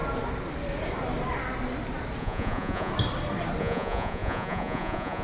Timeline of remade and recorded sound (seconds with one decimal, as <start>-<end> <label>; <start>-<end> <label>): 0.0-2.2 recorded; 2.2-2.9 remade; 2.9-3.6 recorded; 3.6-5.2 remade